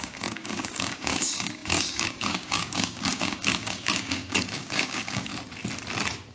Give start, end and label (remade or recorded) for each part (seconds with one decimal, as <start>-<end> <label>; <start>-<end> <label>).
0.0-5.3 remade; 5.3-6.3 recorded